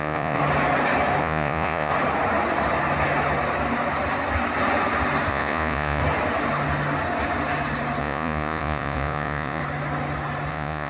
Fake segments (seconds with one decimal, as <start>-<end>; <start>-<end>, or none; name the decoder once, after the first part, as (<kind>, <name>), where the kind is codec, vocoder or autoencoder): 0.0-0.4 (vocoder, Vocos); 1.2-1.9; 5.3-6.0; 8.0-9.6; 10.5-10.9